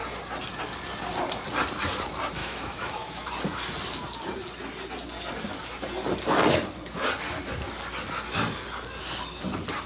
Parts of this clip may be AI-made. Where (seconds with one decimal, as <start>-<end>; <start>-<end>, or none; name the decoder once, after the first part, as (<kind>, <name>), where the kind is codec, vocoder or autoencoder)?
2.4-3.3 (autoencoder, DAC-VAE)